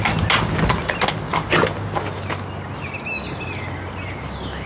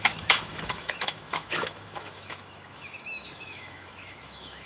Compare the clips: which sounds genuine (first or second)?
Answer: first